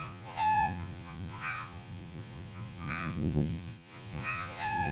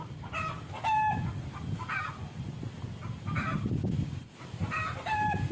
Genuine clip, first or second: second